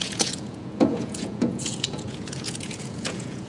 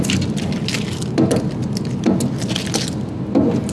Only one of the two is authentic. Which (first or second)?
second